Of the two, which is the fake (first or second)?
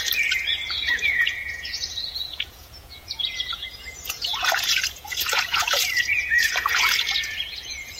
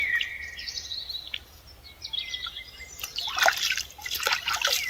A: first